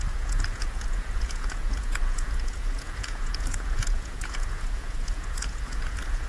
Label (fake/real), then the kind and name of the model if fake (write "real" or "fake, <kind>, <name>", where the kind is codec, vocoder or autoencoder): fake, vocoder, Vocos